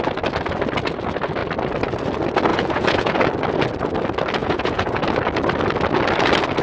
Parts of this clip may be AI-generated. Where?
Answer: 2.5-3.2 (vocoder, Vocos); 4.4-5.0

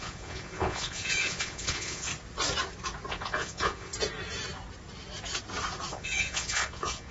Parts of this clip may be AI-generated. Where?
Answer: 0.0-2.1 (vocoder, Vocos); 3.1-3.9; 5.9-7.1

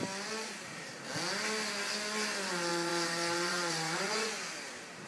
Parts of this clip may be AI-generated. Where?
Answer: 2.7-4.4 (vocoder, Vocos)

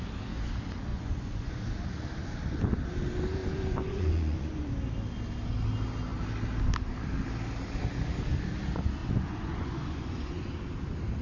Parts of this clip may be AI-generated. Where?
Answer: 0.9-1.6 (vocoder, Vocos); 3.4-4.7; 9.0-10.5

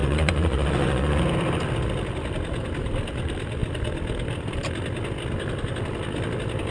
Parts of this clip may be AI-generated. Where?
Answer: 0.0-1.2 (vocoder, Vocos)

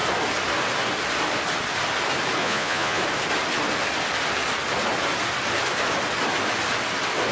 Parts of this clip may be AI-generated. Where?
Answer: 2.4-3.0 (vocoder, Vocos)

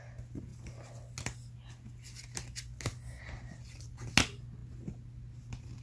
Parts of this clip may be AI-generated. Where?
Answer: none